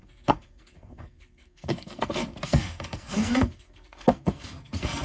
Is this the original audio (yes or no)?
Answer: no